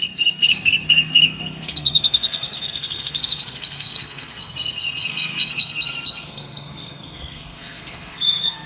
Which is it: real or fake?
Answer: fake